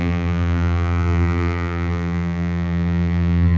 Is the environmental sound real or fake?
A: fake